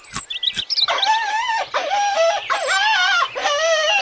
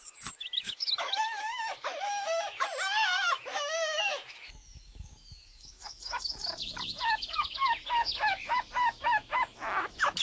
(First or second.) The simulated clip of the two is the second